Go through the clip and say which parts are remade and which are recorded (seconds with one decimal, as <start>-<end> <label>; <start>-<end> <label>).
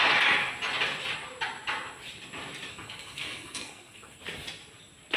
0.0-2.7 recorded; 2.7-4.2 remade; 4.2-5.2 recorded